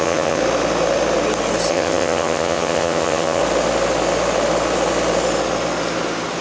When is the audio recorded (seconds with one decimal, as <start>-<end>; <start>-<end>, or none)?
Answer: 0.4-1.7; 3.4-6.4